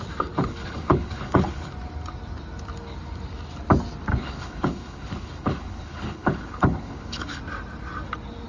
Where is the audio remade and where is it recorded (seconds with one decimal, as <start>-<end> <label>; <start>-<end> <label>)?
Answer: 0.0-0.4 recorded; 0.4-1.7 remade; 1.7-4.1 recorded; 4.1-7.4 remade; 7.4-8.5 recorded